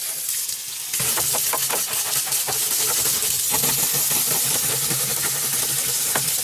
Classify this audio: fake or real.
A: real